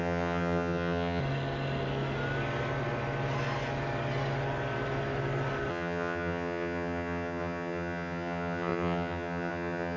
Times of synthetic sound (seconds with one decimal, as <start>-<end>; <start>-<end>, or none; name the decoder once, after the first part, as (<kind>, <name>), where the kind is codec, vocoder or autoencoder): 0.0-1.2 (vocoder, HiFi-GAN); 5.7-10.0